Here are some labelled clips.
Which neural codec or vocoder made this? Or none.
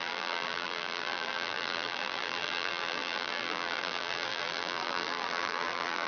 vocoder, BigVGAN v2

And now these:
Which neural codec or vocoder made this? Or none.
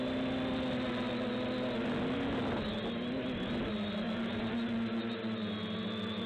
none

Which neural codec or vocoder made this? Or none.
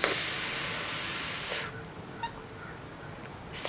none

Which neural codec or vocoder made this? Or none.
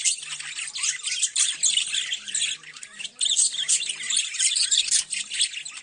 none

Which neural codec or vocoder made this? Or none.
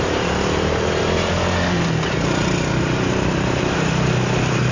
vocoder, BigVGAN v2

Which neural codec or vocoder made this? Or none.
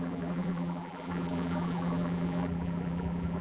vocoder, BigVGAN v2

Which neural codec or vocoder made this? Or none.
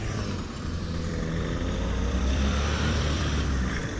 vocoder, BigVGAN v2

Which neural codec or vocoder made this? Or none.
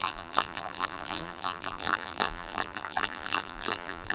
vocoder, BigVGAN v2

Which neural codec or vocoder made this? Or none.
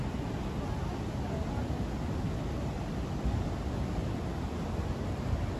none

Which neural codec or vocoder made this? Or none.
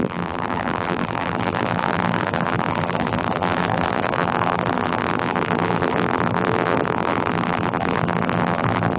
vocoder, BigVGAN v2